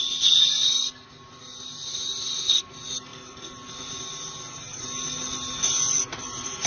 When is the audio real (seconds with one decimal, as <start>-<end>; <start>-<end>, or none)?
0.0-6.7